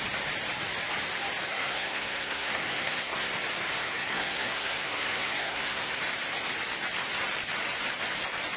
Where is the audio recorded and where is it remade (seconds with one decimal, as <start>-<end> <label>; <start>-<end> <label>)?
0.0-1.5 recorded; 1.5-3.3 remade; 3.3-3.8 recorded; 3.8-6.0 remade; 6.0-8.6 recorded